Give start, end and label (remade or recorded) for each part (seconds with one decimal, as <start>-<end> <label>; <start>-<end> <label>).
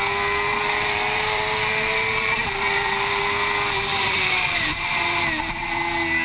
0.0-0.5 recorded; 0.5-3.2 remade; 3.2-3.9 recorded; 3.9-5.2 remade; 5.2-6.2 recorded